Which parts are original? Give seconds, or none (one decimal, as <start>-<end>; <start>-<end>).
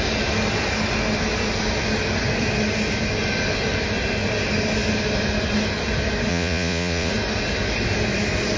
0.0-6.3; 7.1-8.6